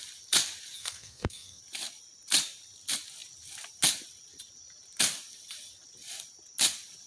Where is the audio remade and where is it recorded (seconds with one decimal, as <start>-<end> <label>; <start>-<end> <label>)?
0.0-0.8 recorded; 0.8-1.6 remade; 1.6-7.1 recorded

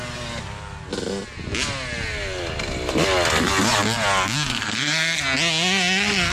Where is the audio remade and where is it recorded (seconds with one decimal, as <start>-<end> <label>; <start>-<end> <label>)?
0.0-4.5 recorded; 4.5-5.2 remade; 5.2-6.3 recorded

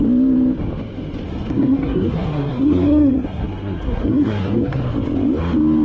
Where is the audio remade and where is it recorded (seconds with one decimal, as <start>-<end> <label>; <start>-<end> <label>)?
0.0-1.3 recorded; 1.3-4.8 remade; 4.8-5.8 recorded

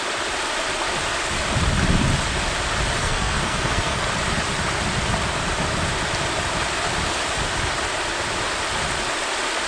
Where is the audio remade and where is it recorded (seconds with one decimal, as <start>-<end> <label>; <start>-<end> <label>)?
0.0-3.0 recorded; 3.0-4.1 remade; 4.1-9.7 recorded

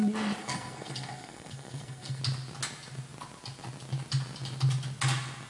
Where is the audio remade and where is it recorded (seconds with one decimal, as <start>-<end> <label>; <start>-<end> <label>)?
0.0-0.4 recorded; 0.4-2.2 remade; 2.2-5.5 recorded